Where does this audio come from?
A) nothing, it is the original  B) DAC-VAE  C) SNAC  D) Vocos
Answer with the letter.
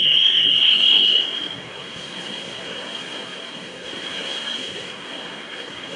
C